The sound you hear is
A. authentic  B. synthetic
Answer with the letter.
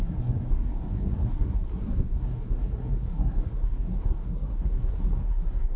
B